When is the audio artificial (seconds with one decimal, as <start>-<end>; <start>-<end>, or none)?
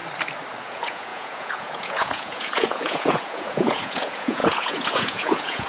0.6-5.7